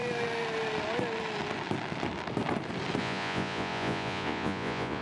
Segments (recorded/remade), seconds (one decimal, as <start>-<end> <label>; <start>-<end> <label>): 0.0-3.0 recorded; 3.0-5.0 remade